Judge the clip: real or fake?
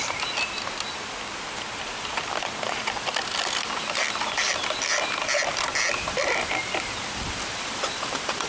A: fake